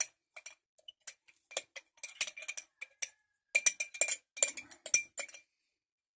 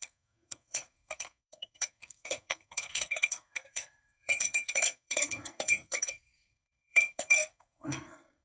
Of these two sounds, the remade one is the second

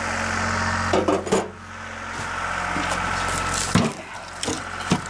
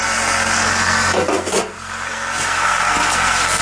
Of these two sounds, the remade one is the second